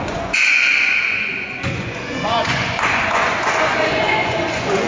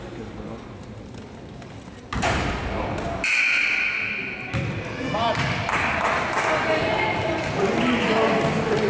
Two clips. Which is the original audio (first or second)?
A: second